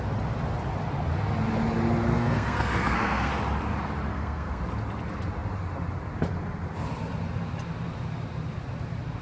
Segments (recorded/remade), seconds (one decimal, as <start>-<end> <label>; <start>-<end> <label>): 0.0-2.1 recorded; 2.1-3.3 remade; 3.3-4.1 recorded; 4.1-4.6 remade; 4.6-9.2 recorded